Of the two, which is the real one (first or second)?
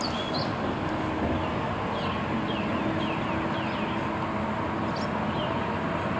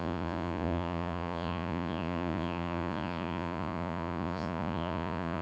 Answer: first